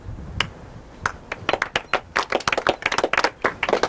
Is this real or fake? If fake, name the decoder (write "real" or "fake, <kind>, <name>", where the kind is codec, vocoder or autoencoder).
real